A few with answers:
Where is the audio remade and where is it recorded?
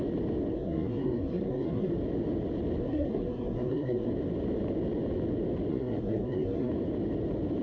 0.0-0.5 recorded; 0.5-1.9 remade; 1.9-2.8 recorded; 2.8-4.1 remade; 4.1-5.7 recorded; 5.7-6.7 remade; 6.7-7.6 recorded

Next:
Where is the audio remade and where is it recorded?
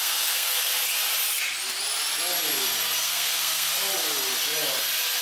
0.0-0.7 remade; 0.7-3.0 recorded; 3.0-3.7 remade; 3.7-5.2 recorded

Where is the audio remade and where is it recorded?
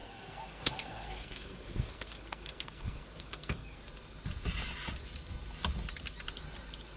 0.0-3.8 remade; 3.8-7.0 recorded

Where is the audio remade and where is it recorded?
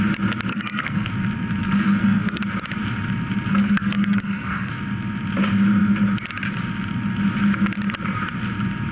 0.0-0.5 recorded; 0.5-1.1 remade; 1.1-1.6 recorded; 1.6-2.4 remade; 2.4-3.5 recorded; 3.5-4.7 remade; 4.7-8.9 recorded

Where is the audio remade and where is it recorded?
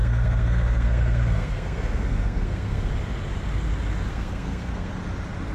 0.0-2.9 remade; 2.9-4.1 recorded; 4.1-4.9 remade; 4.9-5.5 recorded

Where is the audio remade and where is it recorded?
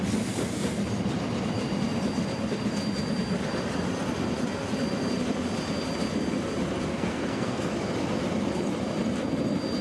0.0-6.9 recorded; 6.9-7.7 remade; 7.7-9.8 recorded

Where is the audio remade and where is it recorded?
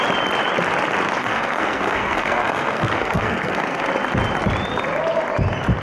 0.0-1.2 recorded; 1.2-3.8 remade; 3.8-5.8 recorded